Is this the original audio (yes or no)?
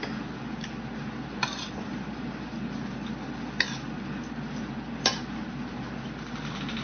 yes